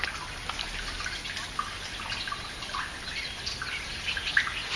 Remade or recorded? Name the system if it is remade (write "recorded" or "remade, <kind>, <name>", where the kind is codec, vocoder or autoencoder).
recorded